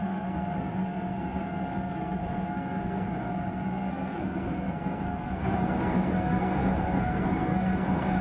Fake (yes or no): yes